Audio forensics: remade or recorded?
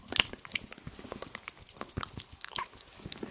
recorded